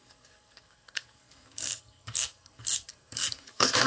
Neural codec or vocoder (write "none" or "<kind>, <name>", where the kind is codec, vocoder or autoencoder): codec, SNAC